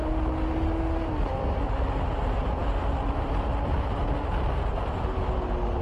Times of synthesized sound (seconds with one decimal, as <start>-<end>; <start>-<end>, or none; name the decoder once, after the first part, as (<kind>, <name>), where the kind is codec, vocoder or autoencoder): none